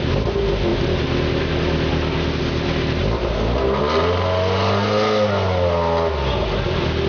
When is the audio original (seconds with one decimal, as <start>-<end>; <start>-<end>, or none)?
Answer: 0.0-3.3; 3.8-7.1